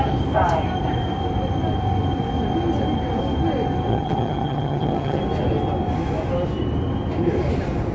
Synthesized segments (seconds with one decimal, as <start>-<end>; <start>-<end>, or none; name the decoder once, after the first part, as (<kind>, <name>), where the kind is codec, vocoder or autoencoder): 3.9-5.2 (vocoder, HiFi-GAN)